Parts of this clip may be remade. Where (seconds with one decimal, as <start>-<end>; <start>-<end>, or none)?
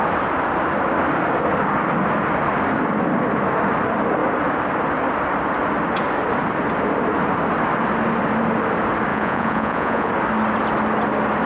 9.1-10.1